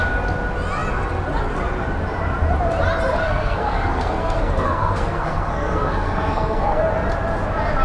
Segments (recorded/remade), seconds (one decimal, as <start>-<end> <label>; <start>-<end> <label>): 0.0-3.2 recorded; 3.2-6.8 remade; 6.8-7.8 recorded